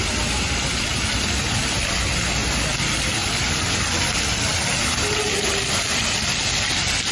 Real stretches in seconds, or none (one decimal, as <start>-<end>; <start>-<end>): 0.0-0.9; 1.6-7.1